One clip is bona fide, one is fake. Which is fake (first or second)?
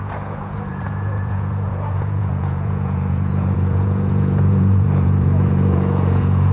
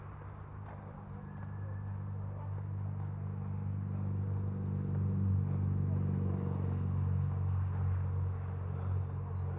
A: first